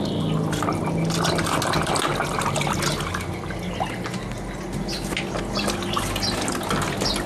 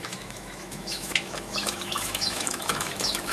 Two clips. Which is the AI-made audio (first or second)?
second